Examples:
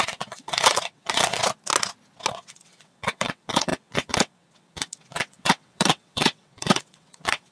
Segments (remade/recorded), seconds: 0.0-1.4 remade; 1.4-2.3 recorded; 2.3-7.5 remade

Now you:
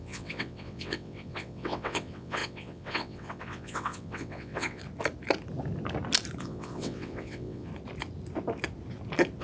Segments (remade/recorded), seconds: 0.0-4.8 remade; 4.8-6.4 recorded; 6.4-7.7 remade; 7.7-9.4 recorded

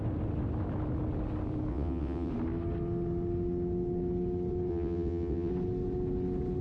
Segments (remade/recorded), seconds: 0.0-1.7 recorded; 1.7-2.3 remade; 2.3-4.7 recorded; 4.7-5.5 remade; 5.5-6.6 recorded

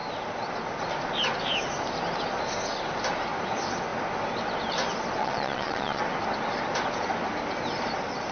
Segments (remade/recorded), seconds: 0.0-5.2 recorded; 5.2-6.0 remade; 6.0-8.3 recorded

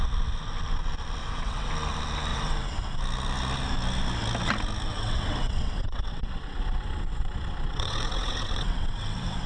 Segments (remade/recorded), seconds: 0.0-1.2 recorded; 1.2-1.7 remade; 1.7-2.3 recorded; 2.3-3.0 remade; 3.0-4.9 recorded; 4.9-9.5 remade

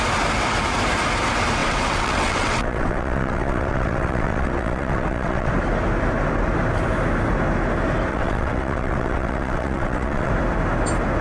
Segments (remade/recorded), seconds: 0.0-1.6 recorded; 1.6-5.5 remade; 5.5-8.1 recorded; 8.1-10.3 remade; 10.3-11.2 recorded

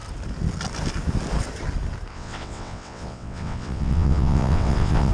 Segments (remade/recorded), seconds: 0.0-2.1 recorded; 2.1-5.1 remade

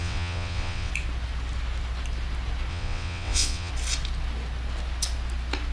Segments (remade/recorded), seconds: 0.0-0.9 remade; 0.9-2.7 recorded; 2.7-3.7 remade; 3.7-5.7 recorded